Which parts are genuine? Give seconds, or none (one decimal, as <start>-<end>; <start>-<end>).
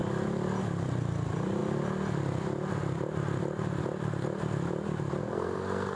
0.0-5.2